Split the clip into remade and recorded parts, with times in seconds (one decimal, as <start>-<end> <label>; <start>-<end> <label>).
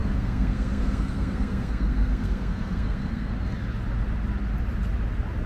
0.0-3.3 remade; 3.3-5.5 recorded